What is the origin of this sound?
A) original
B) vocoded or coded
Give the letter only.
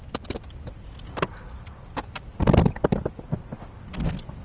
A